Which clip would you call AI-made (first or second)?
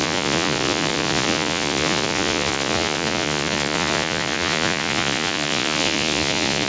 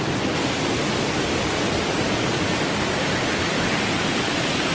first